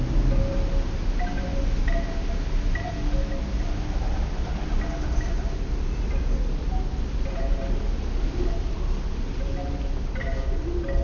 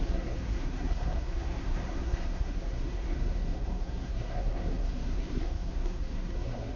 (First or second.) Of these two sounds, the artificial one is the second